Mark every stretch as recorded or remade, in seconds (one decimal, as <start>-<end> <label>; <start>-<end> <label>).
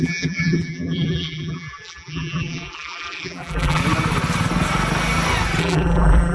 0.0-3.8 remade; 3.8-5.6 recorded; 5.6-6.3 remade